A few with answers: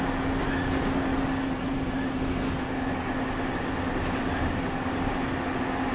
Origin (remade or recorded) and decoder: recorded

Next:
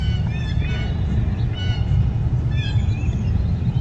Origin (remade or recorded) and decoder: recorded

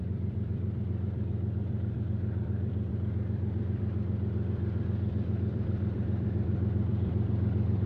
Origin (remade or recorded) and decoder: remade, vocoder, BigVGAN v2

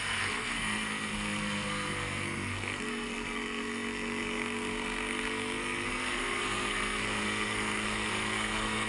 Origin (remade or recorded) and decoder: remade, codec, SNAC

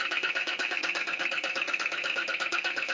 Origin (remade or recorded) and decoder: remade, codec, SNAC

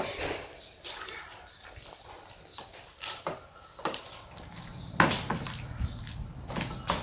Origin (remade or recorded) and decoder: recorded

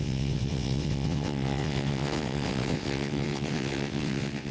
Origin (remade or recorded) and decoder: remade, vocoder, WaveNeXt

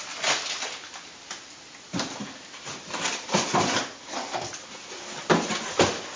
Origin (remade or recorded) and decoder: recorded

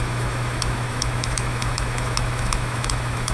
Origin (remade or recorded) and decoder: remade, autoencoder, DAC-VAE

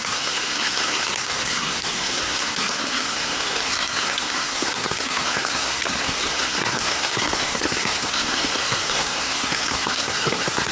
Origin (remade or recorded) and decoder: remade, codec, SNAC